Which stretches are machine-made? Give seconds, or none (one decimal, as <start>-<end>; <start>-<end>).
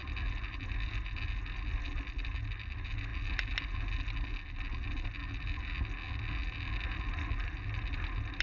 none